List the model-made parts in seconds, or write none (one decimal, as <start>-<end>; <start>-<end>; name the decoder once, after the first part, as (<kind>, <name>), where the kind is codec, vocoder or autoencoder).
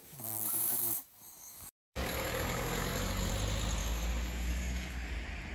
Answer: 0.0-3.3 (codec, DAC); 3.8-5.1